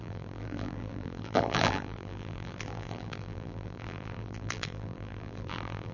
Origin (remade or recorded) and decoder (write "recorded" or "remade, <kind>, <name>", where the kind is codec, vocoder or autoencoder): remade, vocoder, BigVGAN v2